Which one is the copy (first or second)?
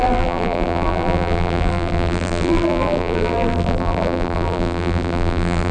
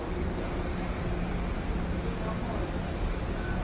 first